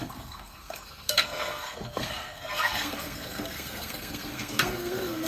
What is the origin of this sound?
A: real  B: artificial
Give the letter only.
B